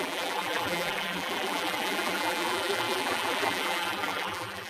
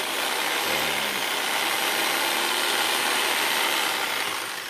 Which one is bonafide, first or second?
second